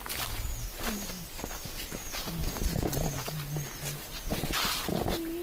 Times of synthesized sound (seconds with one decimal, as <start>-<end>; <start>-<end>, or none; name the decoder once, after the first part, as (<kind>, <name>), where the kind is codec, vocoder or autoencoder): none

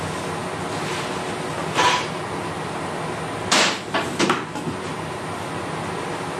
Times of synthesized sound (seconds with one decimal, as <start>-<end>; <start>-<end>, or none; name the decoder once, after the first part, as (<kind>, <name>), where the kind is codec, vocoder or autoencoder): none

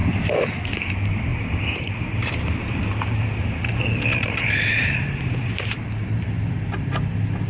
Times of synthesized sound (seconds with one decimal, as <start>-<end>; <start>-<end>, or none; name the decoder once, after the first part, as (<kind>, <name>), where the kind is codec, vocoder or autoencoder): 1.3-5.8 (vocoder, BigVGAN v2)

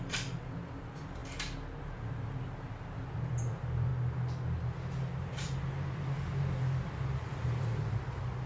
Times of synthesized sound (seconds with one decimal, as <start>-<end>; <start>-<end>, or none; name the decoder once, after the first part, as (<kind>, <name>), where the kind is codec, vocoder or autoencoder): 0.0-1.2 (vocoder, BigVGAN v2); 1.8-3.9; 5.2-8.5

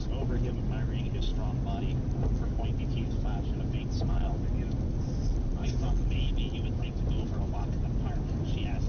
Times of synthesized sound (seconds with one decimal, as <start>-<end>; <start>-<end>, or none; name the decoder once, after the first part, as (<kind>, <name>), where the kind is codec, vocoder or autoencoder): none

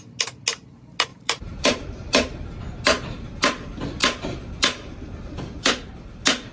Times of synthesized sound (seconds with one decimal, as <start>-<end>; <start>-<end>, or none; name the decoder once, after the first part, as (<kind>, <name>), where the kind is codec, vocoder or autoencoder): 1.1-2.6 (vocoder, BigVGAN v2); 4.0-5.4

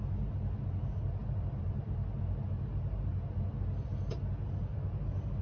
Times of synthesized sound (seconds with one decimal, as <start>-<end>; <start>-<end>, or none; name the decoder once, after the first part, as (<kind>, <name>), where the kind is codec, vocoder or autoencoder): 1.2-1.8 (vocoder, BigVGAN v2)

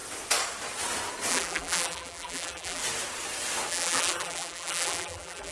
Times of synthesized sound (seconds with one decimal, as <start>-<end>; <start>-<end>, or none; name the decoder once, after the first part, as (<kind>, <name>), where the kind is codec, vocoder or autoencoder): 1.3-2.8 (vocoder, BigVGAN v2); 3.7-5.5